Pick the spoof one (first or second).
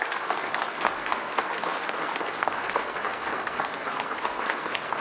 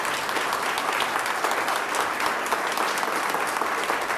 first